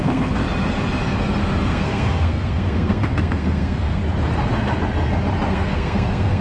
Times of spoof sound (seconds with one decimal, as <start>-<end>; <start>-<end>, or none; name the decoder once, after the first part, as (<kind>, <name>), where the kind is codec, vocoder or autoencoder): 0.0-0.4 (codec, SNAC); 1.7-4.0; 5.5-6.4